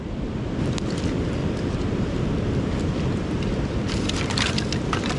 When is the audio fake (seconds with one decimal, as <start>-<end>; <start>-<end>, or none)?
1.4-4.5